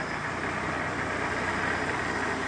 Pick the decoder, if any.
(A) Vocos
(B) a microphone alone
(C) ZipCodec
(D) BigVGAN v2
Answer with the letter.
B